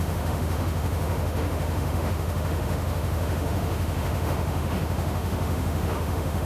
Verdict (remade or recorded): remade